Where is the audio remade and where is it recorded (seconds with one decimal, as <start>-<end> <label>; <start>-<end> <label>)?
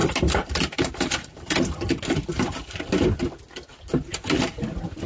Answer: 0.0-3.1 remade; 3.1-5.1 recorded